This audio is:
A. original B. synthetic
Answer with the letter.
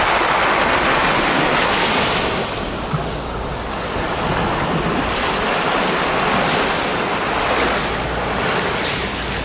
A